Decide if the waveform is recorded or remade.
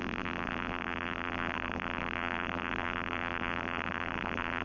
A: remade